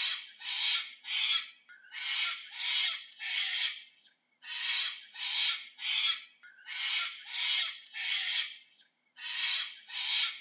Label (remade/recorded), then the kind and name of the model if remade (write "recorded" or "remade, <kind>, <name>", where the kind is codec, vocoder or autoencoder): recorded